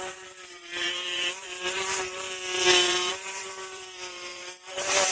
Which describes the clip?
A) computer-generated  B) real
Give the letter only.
A